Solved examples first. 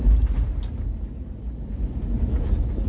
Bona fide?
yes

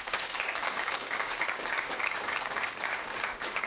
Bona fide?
no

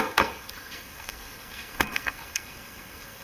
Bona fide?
no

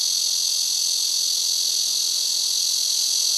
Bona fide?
yes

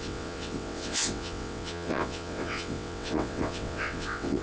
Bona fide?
no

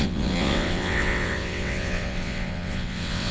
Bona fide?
no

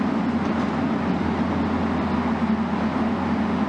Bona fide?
yes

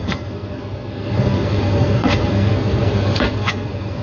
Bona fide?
no